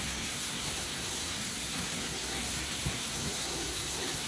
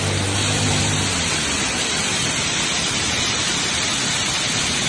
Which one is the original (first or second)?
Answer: second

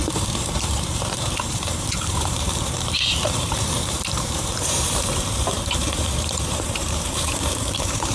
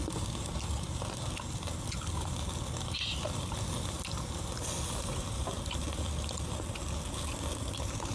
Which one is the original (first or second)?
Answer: second